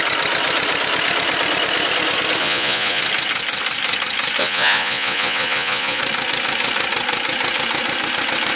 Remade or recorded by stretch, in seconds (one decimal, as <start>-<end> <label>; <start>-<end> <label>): 0.0-2.4 recorded; 2.4-3.0 remade; 3.0-4.4 recorded; 4.4-6.0 remade; 6.0-8.6 recorded